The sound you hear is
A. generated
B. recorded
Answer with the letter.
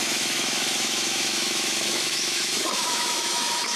A